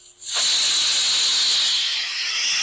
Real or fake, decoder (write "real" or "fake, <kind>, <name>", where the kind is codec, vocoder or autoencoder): real